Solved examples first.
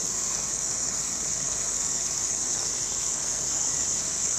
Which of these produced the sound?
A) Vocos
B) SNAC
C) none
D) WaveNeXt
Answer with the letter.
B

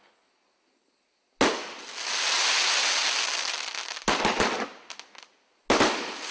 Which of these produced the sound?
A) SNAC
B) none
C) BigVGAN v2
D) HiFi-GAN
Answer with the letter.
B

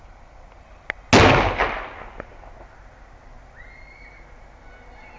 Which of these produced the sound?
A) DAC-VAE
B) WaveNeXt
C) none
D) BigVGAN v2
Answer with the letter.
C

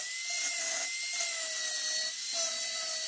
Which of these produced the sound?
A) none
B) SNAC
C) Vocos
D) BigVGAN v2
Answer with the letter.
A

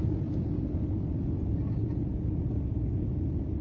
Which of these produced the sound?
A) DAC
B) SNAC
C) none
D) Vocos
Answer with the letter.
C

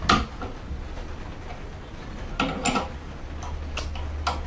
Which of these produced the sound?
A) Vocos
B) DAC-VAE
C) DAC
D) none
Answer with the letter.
D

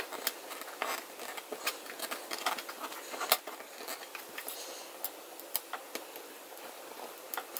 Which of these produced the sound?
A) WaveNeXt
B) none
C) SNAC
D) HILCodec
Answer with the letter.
B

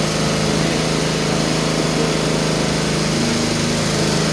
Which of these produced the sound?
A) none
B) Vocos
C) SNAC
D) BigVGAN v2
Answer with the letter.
A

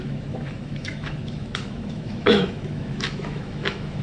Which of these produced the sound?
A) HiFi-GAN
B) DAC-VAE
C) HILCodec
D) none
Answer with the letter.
B